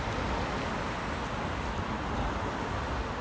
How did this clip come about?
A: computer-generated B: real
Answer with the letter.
B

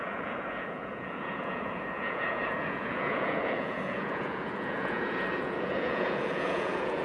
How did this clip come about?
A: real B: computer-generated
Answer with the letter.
B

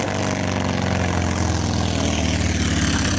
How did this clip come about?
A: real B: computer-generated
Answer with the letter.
A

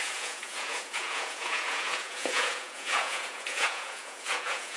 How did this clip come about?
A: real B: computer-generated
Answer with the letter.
B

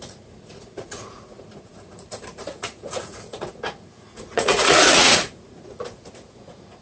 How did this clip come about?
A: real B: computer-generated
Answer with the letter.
B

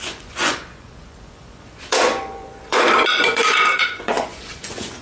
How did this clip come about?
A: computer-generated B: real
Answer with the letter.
A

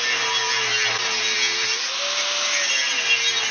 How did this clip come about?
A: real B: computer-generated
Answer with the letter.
A